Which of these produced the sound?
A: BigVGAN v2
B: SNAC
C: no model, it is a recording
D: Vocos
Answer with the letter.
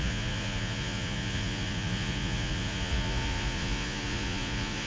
D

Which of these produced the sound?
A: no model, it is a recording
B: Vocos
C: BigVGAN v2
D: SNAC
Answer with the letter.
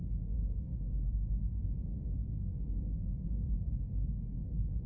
D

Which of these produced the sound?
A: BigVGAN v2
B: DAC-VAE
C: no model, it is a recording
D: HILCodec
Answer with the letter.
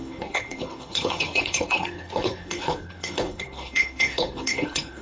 D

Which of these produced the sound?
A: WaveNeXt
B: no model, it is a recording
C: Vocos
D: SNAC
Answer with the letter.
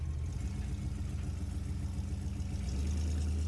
B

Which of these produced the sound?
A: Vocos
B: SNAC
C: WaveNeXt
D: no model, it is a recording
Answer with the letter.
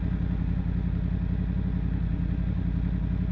D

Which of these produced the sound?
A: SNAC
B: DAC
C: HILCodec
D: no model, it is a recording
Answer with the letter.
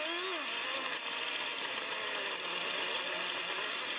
D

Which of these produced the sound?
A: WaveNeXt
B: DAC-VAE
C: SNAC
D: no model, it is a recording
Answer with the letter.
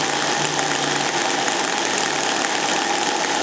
D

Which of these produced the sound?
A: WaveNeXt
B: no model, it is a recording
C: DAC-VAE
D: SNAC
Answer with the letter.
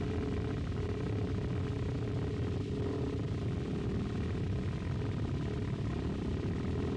B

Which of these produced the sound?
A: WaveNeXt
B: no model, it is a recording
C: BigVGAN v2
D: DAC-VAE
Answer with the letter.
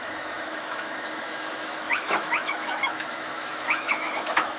D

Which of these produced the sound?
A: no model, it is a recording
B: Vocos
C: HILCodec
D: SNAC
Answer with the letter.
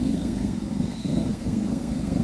D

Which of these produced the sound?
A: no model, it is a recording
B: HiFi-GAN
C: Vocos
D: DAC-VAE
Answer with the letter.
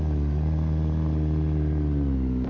A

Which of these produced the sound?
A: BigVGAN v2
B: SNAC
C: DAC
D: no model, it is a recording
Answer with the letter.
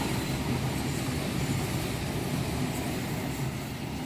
D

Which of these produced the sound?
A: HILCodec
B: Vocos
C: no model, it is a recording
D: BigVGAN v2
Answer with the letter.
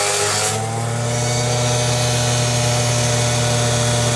C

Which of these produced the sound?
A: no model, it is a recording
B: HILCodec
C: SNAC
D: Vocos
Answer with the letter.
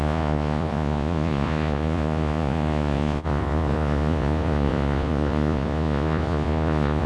D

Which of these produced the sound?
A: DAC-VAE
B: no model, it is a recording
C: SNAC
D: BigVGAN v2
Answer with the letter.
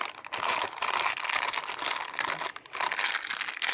B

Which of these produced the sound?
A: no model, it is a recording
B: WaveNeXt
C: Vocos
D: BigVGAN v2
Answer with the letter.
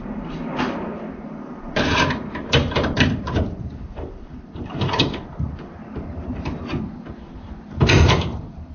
D